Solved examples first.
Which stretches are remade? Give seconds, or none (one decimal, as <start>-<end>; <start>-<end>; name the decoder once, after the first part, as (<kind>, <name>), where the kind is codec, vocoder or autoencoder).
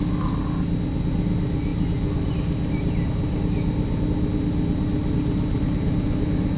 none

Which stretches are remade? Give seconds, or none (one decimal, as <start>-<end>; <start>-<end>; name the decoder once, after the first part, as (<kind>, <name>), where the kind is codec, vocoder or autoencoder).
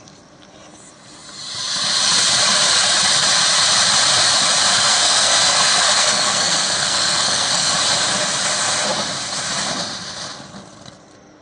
4.7-7.7 (codec, SNAC)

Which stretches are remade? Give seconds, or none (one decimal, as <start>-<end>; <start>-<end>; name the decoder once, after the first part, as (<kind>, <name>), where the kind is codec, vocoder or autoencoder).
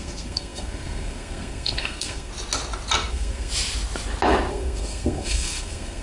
0.0-2.3 (codec, SNAC); 3.1-3.5; 4.5-6.0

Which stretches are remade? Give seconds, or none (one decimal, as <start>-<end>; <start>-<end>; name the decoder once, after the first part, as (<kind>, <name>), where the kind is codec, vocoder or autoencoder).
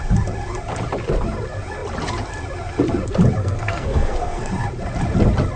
3.4-4.5 (codec, SNAC)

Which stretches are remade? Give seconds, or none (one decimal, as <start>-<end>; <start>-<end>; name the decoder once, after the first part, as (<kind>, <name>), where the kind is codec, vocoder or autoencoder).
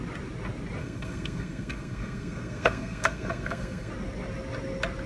0.8-3.9 (codec, SNAC)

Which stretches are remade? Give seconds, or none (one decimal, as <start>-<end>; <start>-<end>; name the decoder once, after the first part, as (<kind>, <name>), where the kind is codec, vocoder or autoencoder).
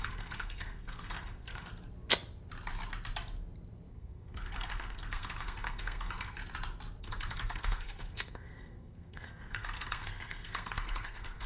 0.0-1.7 (codec, SNAC); 3.9-6.4; 7.0-11.5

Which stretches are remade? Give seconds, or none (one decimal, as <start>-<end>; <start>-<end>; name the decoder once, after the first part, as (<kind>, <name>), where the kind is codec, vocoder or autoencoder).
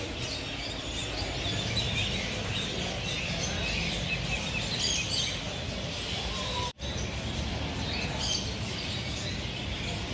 none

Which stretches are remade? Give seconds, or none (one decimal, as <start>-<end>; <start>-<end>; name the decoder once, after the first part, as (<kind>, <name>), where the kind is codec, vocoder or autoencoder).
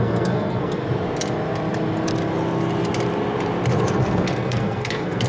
0.0-0.8 (codec, SNAC); 3.9-5.3